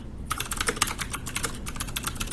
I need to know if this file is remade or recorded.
remade